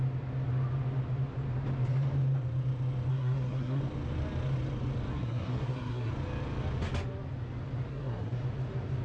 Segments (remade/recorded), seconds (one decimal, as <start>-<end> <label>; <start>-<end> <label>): 0.0-3.1 recorded; 3.1-3.8 remade; 3.8-5.1 recorded; 5.1-6.1 remade; 6.1-7.9 recorded; 7.9-8.4 remade; 8.4-9.0 recorded